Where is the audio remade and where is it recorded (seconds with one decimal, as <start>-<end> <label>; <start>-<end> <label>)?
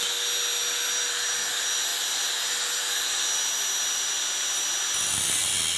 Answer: 0.0-5.8 recorded